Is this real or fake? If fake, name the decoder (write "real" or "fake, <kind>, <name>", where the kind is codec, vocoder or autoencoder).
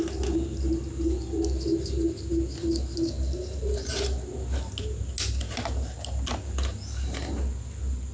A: real